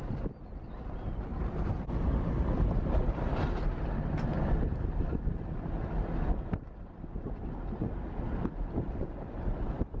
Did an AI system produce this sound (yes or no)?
no